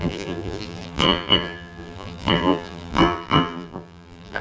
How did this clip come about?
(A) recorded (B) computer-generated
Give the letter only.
B